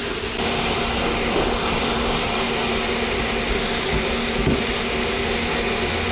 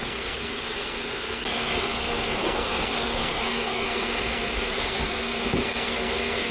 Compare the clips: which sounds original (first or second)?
first